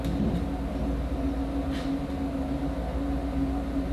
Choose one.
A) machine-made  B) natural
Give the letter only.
B